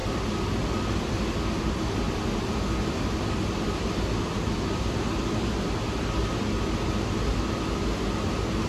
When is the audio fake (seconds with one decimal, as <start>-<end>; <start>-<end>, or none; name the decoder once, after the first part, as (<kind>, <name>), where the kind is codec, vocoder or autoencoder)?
none